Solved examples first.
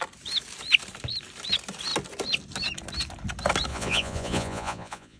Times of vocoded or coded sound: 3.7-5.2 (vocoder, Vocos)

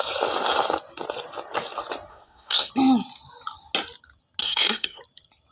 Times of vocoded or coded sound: 2.1-2.7 (codec, SNAC); 4.4-5.0

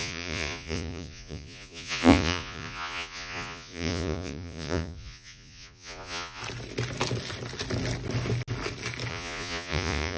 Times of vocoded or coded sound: 0.0-6.4 (vocoder, Vocos); 9.1-10.2

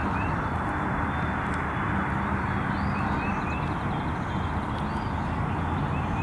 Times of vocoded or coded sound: none

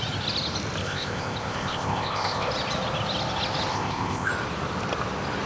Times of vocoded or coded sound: 0.8-2.5 (codec, ZipCodec); 3.7-4.3

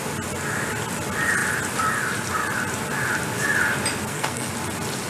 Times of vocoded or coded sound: 3.9-4.5 (codec, SNAC)

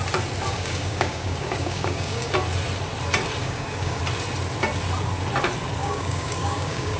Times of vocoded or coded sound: 0.5-2.3 (codec, DAC); 3.4-4.0; 5.8-7.0

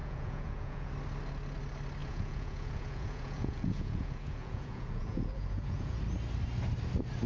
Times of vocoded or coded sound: 0.0-0.9 (vocoder, Vocos); 2.0-6.0